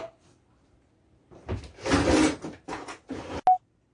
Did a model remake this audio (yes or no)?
no